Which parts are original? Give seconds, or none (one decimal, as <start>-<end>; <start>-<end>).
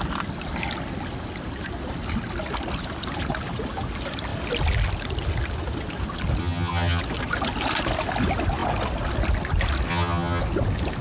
0.0-6.4; 7.0-9.9; 10.4-11.0